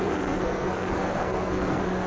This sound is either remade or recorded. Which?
remade